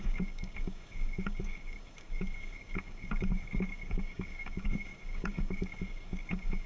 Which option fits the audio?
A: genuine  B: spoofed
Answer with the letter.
B